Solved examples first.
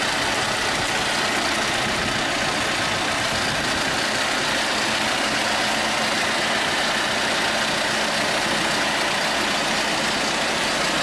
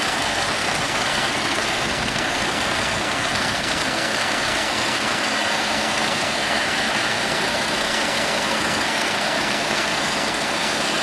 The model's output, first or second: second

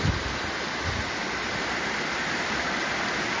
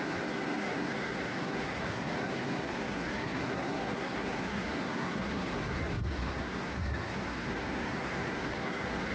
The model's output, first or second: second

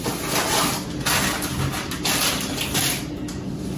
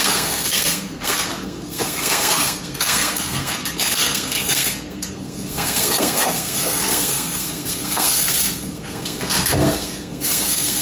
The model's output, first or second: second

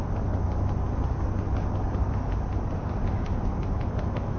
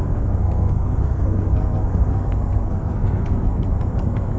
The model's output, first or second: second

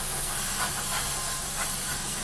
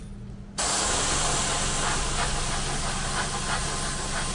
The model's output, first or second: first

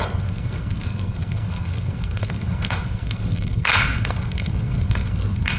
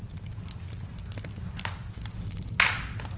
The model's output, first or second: first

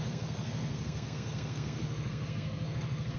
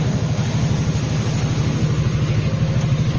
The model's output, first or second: first